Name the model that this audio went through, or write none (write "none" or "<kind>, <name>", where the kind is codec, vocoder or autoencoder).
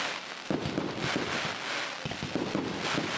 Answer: none